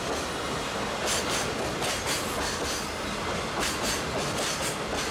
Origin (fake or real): real